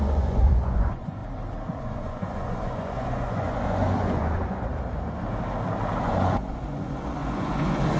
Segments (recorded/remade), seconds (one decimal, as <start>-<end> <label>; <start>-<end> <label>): 0.0-1.2 remade; 1.2-1.8 recorded; 1.8-4.7 remade; 4.7-6.0 recorded; 6.0-8.0 remade